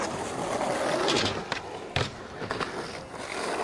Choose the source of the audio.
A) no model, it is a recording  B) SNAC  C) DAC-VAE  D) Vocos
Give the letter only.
A